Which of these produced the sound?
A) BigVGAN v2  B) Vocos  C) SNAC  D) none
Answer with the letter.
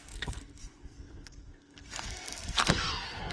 C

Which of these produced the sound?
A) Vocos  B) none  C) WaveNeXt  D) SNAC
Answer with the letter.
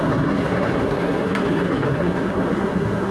D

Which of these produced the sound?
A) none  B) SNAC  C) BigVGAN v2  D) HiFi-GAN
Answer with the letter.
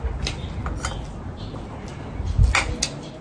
A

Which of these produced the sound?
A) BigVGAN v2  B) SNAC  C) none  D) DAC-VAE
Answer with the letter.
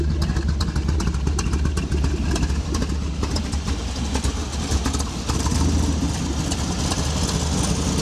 C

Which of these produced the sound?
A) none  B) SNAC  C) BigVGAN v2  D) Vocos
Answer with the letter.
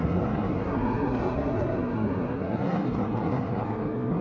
B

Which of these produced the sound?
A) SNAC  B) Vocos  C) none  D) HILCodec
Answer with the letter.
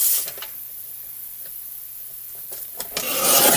C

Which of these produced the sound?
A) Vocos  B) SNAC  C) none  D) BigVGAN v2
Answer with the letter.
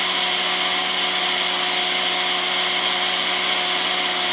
C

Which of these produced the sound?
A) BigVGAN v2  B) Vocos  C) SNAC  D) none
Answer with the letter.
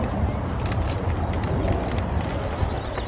D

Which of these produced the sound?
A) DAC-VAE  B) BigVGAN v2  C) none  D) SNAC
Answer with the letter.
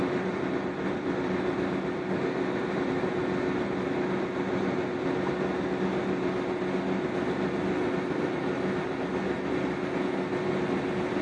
C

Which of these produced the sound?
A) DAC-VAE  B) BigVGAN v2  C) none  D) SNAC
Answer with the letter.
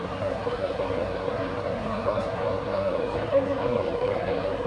D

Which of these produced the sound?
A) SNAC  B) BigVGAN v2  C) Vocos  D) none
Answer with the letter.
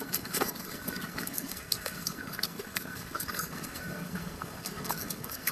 A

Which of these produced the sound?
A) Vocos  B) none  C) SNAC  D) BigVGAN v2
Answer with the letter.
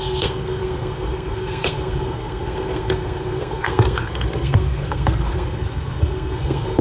C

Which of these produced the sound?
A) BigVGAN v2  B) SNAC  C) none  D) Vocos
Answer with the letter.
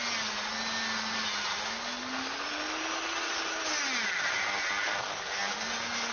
C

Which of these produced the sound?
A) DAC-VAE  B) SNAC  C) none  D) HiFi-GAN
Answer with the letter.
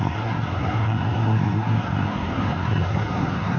B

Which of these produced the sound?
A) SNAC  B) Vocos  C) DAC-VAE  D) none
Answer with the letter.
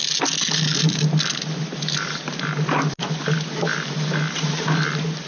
D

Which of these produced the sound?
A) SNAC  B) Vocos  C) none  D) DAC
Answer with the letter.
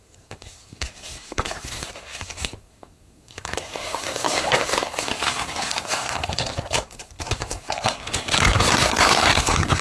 A